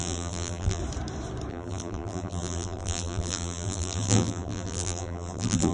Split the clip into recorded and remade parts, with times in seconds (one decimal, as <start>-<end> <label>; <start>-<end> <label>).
0.0-0.8 remade; 0.8-1.5 recorded; 1.5-5.7 remade